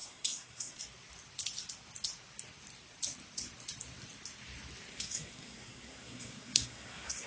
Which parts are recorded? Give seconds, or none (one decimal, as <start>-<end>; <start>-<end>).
0.8-4.9